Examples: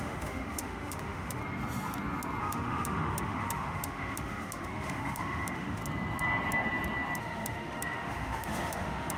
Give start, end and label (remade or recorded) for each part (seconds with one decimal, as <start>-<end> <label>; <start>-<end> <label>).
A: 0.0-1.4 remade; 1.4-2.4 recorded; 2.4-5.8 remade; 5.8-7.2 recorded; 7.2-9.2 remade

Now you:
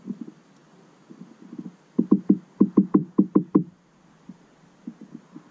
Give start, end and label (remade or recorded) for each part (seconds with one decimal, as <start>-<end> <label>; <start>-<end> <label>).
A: 0.0-5.5 recorded

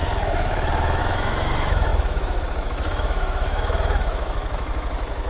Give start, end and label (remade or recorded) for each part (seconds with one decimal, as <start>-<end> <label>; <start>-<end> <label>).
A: 0.0-5.3 remade

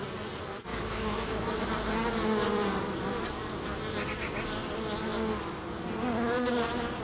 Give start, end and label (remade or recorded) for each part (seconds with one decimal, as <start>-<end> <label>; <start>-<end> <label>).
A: 0.0-0.7 recorded; 0.7-1.6 remade; 1.6-7.0 recorded

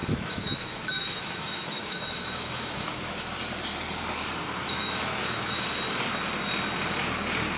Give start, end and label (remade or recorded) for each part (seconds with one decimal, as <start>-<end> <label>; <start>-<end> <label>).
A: 0.0-3.4 remade; 3.4-4.6 recorded; 4.6-5.7 remade; 5.7-7.6 recorded